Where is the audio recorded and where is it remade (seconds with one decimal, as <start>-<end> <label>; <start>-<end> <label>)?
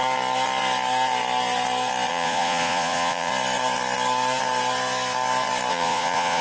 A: 0.0-2.1 recorded; 2.1-3.3 remade; 3.3-5.7 recorded; 5.7-6.4 remade